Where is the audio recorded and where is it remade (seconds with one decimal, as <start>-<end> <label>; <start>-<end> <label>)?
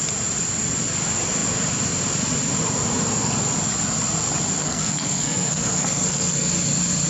0.0-4.6 recorded; 4.6-6.5 remade; 6.5-7.1 recorded